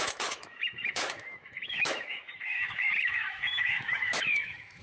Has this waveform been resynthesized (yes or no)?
yes